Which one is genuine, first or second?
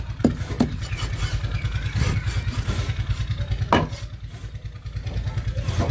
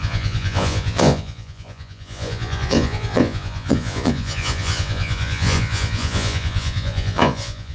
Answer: first